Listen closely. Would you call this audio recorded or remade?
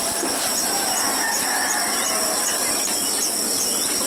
remade